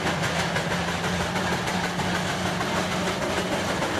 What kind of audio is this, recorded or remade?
recorded